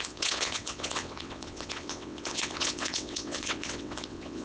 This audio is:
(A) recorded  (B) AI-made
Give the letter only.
B